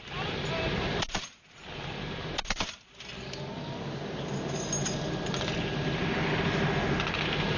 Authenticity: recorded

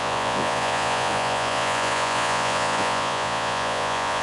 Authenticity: remade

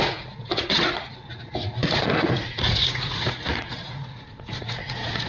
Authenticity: remade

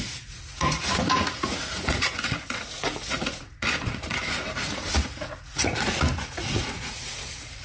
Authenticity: remade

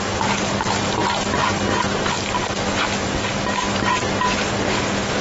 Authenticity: recorded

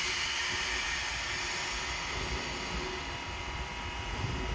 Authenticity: recorded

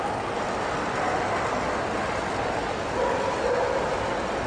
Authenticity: recorded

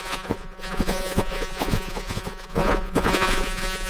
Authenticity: remade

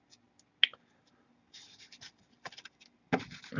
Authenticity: recorded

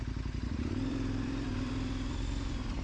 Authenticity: remade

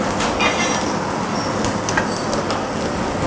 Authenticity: recorded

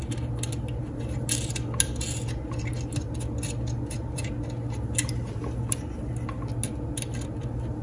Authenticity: recorded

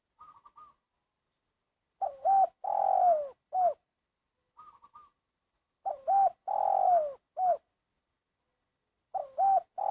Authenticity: recorded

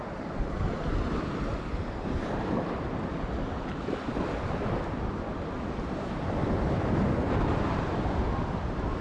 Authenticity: remade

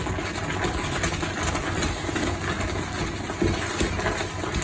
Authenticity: recorded